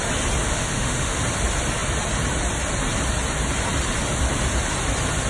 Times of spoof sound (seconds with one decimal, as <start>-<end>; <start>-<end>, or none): 0.4-1.2

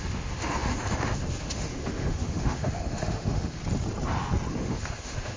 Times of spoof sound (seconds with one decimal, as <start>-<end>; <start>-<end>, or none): 0.0-3.6; 4.5-5.4

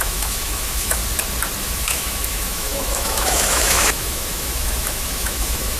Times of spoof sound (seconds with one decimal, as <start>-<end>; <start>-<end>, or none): 0.0-1.0; 1.6-5.8